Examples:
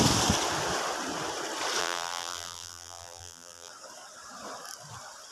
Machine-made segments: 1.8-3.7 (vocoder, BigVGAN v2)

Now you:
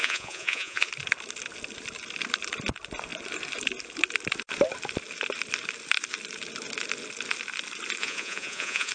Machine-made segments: 0.0-0.9 (vocoder, Vocos); 8.0-8.9

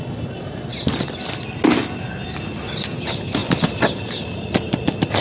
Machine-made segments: none

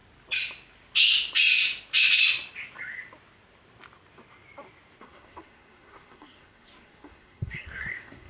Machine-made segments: 5.0-8.3 (codec, SNAC)

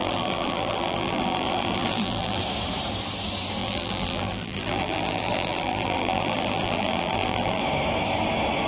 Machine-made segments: 0.0-2.4 (vocoder, BigVGAN v2); 3.6-7.6